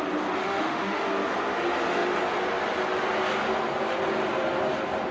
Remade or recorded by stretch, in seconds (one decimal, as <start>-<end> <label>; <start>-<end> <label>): 0.0-0.4 recorded; 0.4-1.1 remade; 1.1-5.1 recorded